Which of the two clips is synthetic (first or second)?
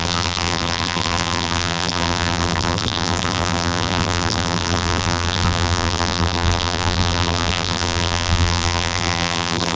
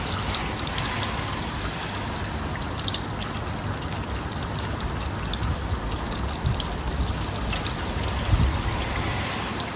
first